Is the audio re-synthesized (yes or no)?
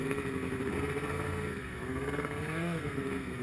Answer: yes